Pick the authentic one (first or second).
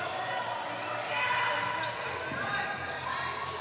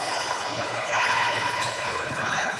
first